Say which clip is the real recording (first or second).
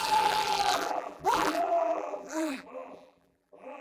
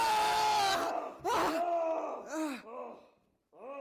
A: second